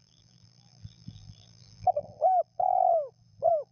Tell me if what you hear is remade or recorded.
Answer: remade